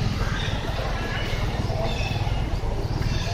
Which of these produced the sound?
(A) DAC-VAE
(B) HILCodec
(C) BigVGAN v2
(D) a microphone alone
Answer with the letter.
D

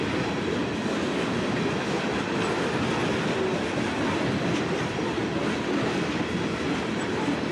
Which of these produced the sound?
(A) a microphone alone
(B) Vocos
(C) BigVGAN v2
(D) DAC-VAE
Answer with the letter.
A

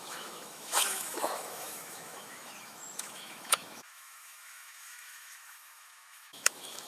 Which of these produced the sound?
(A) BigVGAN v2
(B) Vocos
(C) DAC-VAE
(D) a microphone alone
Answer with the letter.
C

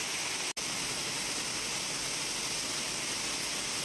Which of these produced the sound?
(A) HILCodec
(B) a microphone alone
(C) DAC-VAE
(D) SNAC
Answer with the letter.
B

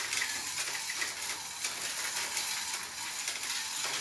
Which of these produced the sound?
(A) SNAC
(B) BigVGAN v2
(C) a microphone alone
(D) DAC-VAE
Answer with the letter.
C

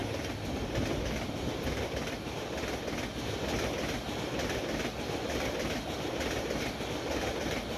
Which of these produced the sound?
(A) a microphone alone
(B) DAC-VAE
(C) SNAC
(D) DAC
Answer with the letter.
A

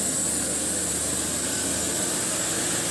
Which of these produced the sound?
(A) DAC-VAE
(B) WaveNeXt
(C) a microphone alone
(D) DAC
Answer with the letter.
C